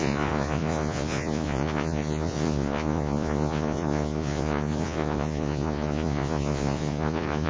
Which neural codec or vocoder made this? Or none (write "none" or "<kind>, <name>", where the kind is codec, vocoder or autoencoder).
vocoder, Vocos